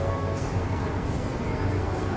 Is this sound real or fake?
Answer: fake